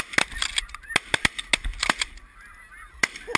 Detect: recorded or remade recorded